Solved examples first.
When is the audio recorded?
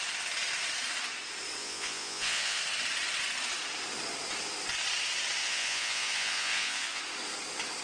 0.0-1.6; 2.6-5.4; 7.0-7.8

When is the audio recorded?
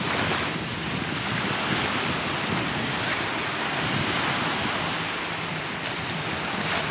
0.0-6.9